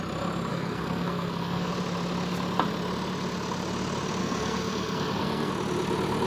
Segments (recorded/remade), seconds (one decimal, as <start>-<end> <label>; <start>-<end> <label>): 0.0-0.5 recorded; 0.5-1.7 remade; 1.7-4.2 recorded; 4.2-5.5 remade; 5.5-6.3 recorded

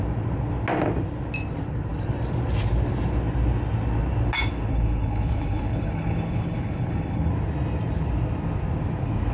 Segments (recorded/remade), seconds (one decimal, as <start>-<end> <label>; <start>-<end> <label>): 0.0-4.7 recorded; 4.7-7.3 remade; 7.3-9.3 recorded